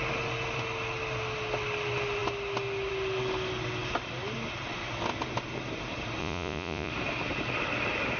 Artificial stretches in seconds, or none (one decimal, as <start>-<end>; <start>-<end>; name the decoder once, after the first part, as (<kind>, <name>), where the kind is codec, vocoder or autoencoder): 6.2-6.9 (vocoder, Vocos)